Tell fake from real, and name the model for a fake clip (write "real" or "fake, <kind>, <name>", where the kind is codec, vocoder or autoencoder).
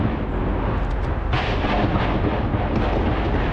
real